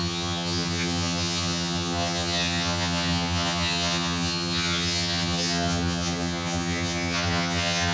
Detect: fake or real fake